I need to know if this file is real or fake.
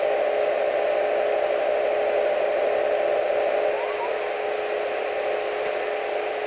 real